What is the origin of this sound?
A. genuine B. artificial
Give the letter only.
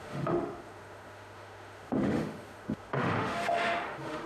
B